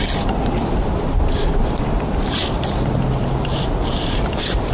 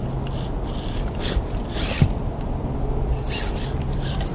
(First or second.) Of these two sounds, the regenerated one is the first